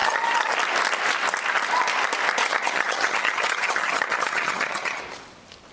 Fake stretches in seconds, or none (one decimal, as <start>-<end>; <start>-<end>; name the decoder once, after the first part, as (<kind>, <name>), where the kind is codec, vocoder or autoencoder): 0.0-0.5 (vocoder, HiFi-GAN); 2.4-5.0